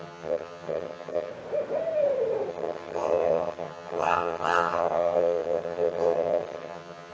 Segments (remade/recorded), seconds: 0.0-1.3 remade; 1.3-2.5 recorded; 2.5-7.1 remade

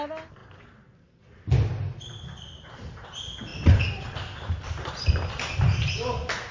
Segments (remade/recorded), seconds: 0.0-6.5 recorded

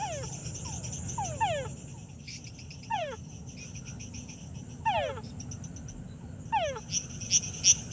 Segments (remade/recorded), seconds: 0.0-7.9 recorded

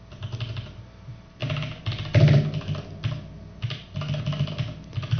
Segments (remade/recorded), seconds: 0.0-5.2 recorded

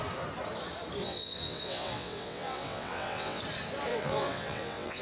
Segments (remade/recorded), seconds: 0.0-1.0 recorded; 1.0-3.4 remade; 3.4-3.9 recorded; 3.9-5.0 remade

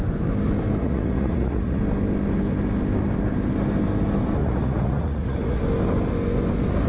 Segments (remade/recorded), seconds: 0.0-0.8 recorded; 0.8-1.8 remade; 1.8-4.4 recorded; 4.4-5.6 remade; 5.6-6.9 recorded

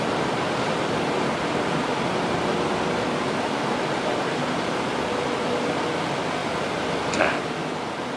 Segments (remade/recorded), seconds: 0.0-6.4 recorded; 6.4-7.4 remade; 7.4-8.2 recorded

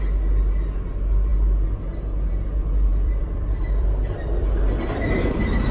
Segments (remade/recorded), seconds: 0.0-2.9 recorded; 2.9-5.7 remade